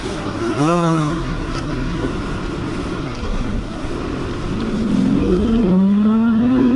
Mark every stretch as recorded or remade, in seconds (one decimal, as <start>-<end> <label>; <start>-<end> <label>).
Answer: 0.0-2.1 remade; 2.1-3.0 recorded; 3.0-3.9 remade; 3.9-5.2 recorded; 5.2-6.8 remade